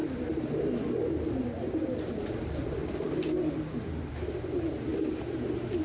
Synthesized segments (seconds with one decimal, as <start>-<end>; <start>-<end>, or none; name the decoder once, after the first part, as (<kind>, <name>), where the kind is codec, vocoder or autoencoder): none